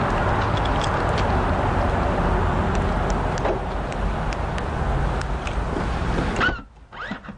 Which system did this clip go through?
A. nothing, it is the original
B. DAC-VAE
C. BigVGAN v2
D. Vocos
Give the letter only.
A